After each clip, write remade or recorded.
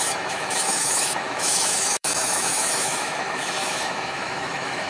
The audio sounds remade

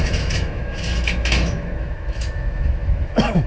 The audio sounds remade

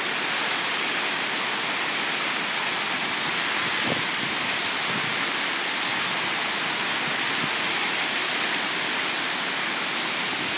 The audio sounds recorded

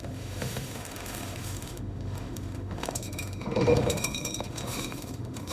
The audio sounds remade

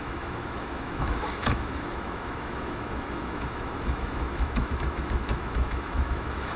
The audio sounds remade